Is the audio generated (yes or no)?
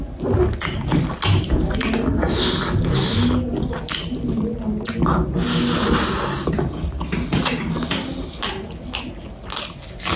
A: no